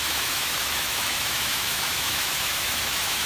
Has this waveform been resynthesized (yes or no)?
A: yes